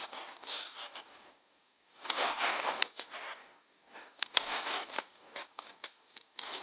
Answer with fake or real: fake